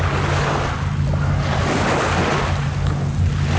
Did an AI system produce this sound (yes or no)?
no